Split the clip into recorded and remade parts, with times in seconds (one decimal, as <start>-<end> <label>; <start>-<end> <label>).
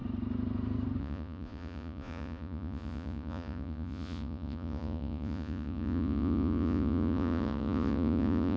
0.0-1.0 recorded; 1.0-8.6 remade